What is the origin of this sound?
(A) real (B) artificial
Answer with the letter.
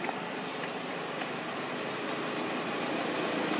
A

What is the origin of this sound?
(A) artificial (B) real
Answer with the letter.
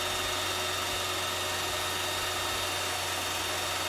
B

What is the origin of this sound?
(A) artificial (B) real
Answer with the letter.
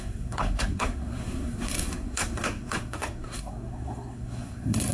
A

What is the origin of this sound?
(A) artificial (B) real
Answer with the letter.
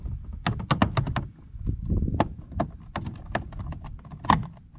B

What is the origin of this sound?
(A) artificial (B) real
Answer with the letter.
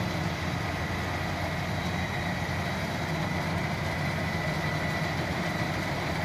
B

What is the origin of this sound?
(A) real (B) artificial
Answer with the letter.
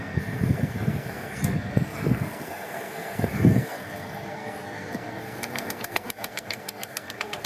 B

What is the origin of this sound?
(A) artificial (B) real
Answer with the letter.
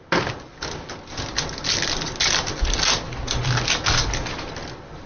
B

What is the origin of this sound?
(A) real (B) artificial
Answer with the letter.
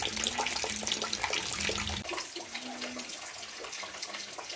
A